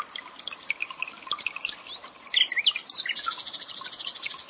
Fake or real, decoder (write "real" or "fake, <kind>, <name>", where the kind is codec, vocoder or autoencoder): real